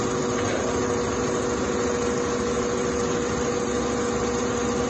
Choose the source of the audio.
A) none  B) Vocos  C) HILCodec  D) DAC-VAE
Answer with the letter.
A